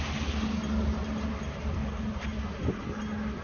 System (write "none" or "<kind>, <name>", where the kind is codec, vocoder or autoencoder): none